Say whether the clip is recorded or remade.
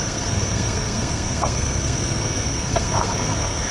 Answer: remade